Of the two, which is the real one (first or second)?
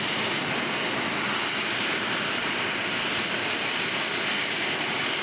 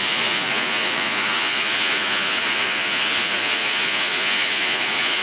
first